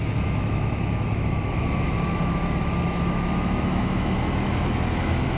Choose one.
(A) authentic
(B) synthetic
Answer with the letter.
B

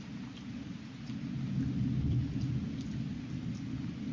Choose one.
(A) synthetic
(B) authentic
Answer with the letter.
B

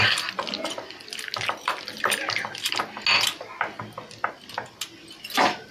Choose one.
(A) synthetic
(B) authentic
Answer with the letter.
B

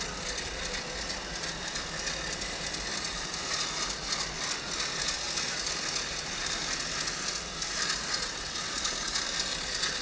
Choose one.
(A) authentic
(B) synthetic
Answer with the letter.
A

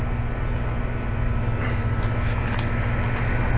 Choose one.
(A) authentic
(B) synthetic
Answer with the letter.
A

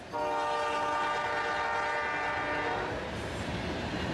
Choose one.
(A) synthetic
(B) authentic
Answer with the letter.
B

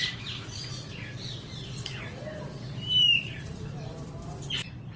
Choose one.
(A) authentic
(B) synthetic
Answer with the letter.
B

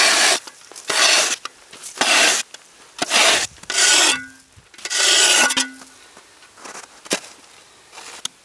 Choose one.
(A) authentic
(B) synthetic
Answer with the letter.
A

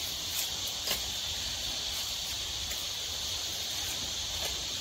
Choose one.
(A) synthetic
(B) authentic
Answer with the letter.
B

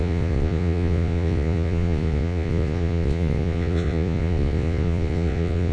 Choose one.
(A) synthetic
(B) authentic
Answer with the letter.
A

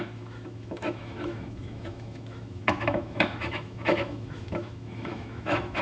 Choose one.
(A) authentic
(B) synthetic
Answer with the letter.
B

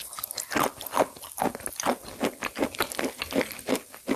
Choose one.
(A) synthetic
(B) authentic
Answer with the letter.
B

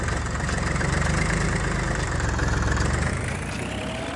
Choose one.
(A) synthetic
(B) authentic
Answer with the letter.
B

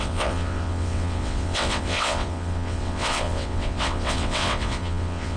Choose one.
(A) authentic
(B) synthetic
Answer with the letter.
B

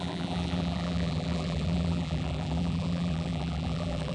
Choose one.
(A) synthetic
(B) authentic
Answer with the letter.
A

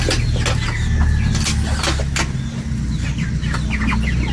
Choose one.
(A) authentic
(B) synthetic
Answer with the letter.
A